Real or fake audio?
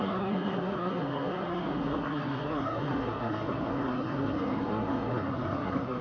fake